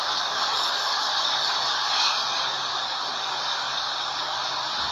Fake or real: fake